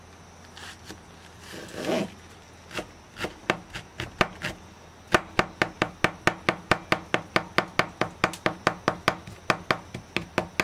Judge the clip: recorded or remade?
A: recorded